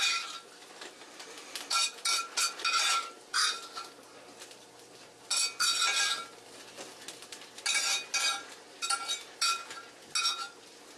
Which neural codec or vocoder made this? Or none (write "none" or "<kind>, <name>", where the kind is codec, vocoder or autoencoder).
none